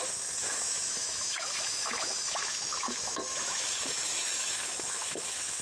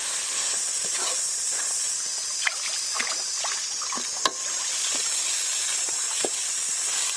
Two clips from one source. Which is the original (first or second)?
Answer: second